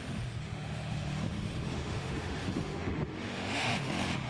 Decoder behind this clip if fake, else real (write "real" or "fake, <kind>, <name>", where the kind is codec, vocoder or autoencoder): fake, autoencoder, DAC-VAE